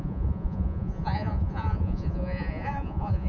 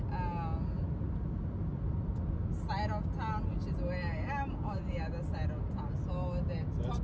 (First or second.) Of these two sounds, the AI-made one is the first